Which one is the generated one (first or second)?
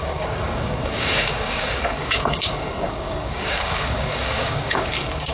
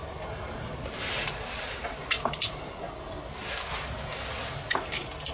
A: first